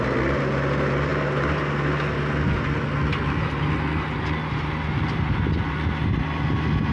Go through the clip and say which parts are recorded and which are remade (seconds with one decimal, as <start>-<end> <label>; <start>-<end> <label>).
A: 0.0-6.9 recorded